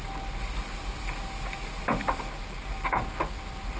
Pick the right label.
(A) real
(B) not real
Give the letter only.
A